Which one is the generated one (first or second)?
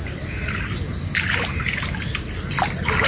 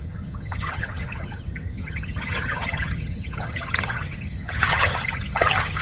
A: second